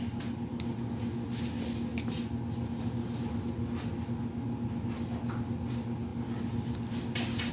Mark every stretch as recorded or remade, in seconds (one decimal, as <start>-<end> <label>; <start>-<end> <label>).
0.0-7.5 recorded